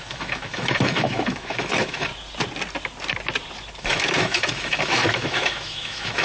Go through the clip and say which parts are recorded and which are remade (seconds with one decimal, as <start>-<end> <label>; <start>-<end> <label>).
0.0-2.1 remade; 2.1-3.8 recorded; 3.8-6.2 remade